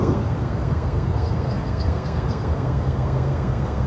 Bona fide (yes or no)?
no